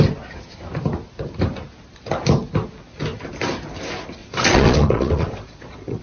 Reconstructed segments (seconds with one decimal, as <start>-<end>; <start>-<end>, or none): 4.2-6.0